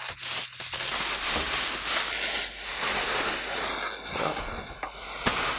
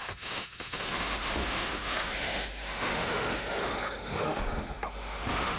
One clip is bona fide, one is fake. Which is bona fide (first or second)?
first